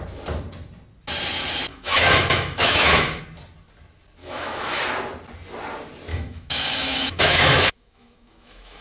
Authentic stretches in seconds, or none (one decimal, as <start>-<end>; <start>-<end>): 0.0-1.7; 3.2-4.2; 4.8-6.1